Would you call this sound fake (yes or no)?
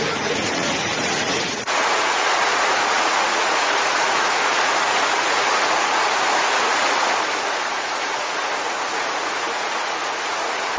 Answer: yes